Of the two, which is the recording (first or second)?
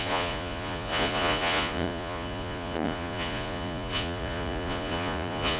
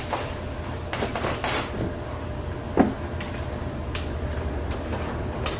second